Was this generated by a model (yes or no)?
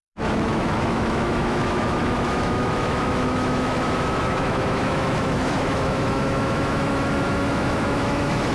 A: yes